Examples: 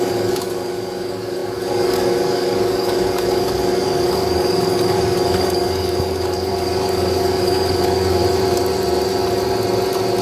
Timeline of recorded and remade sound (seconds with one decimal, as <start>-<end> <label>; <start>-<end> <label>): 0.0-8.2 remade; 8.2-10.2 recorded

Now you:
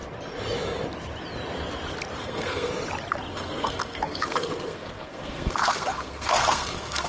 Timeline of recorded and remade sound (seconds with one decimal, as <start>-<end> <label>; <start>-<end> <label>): 0.0-2.2 recorded; 2.2-2.7 remade; 2.7-3.3 recorded; 3.3-7.1 remade

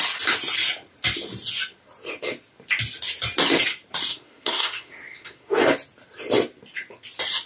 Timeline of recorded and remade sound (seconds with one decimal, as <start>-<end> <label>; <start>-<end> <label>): 0.0-4.1 recorded; 4.1-5.6 remade; 5.6-7.5 recorded

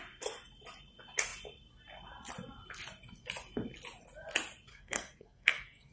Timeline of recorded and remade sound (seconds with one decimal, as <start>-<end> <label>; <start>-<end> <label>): 0.0-4.7 recorded; 4.7-5.9 remade

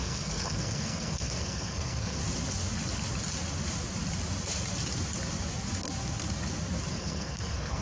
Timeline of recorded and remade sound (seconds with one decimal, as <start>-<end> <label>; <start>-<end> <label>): 0.0-2.2 remade; 2.2-6.9 recorded; 6.9-7.8 remade

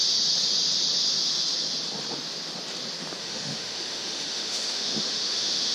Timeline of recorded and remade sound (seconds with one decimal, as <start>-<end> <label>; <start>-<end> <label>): 0.0-3.2 recorded; 3.2-5.7 remade

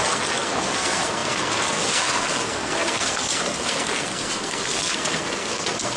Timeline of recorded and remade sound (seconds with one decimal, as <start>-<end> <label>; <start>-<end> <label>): 0.0-6.0 remade

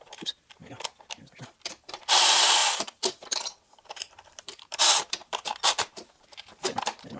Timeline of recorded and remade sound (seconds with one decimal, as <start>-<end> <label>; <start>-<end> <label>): 0.0-0.6 remade; 0.6-1.8 recorded; 1.8-7.2 remade